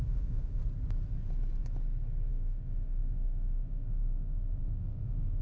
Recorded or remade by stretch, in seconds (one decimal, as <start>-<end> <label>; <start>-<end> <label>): 0.0-0.6 remade; 0.6-2.3 recorded; 2.3-5.4 remade